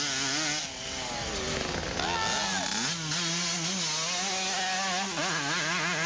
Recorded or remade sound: recorded